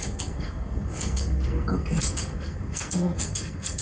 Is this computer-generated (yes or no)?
yes